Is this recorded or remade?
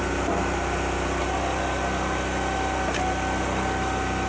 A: recorded